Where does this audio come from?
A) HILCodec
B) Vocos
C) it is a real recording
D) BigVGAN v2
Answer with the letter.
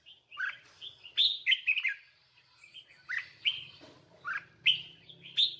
C